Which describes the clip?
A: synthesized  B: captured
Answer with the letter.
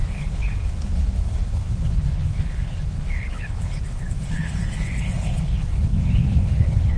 A